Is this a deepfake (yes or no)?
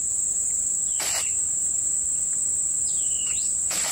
no